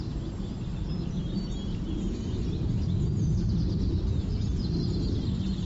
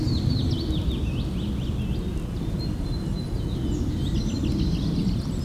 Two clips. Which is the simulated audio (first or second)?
first